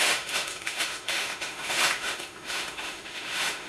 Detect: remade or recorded remade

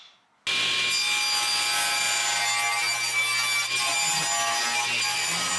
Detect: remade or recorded recorded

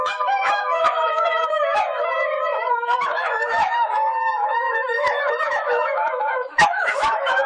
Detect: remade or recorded remade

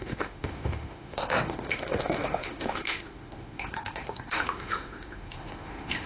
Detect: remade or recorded remade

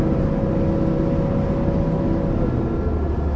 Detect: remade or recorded recorded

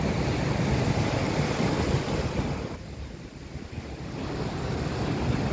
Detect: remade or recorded recorded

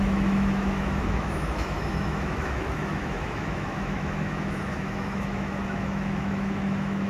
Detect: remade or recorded remade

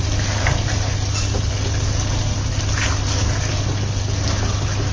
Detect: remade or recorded recorded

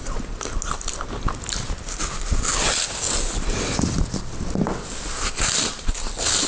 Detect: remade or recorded recorded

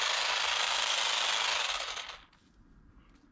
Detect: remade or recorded recorded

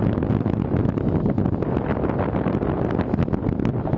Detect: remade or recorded recorded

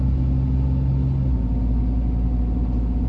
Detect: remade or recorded recorded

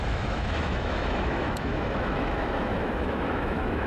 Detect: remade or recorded remade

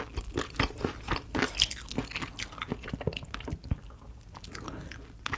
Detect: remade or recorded recorded